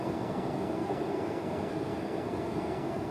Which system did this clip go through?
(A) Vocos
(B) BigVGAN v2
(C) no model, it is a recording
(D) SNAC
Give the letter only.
D